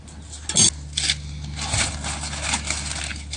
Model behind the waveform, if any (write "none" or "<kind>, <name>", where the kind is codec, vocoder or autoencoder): none